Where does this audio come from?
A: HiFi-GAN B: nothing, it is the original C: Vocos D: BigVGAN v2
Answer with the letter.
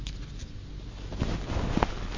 B